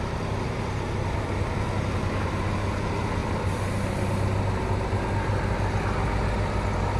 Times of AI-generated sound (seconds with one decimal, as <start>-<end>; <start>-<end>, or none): 3.2-4.5